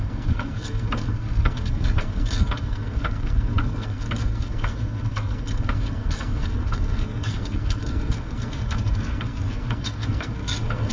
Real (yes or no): no